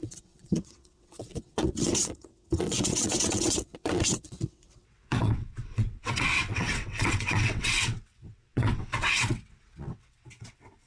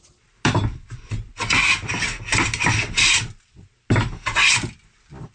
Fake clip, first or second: first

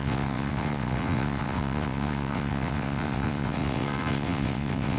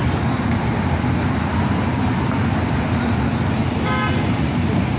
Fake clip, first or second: first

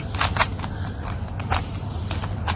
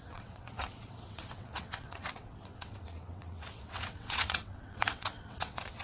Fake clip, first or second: second